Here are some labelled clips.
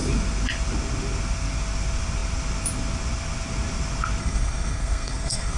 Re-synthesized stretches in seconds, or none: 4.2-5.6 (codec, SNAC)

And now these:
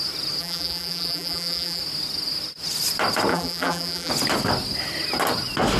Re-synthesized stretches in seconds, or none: 0.4-1.8 (vocoder, BigVGAN v2); 3.3-4.1